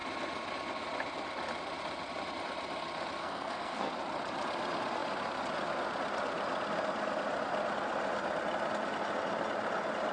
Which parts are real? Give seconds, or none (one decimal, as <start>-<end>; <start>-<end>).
0.0-3.2; 3.9-10.1